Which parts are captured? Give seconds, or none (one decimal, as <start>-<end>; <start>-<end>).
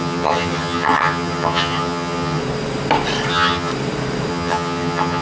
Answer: 2.4-3.3; 3.7-4.3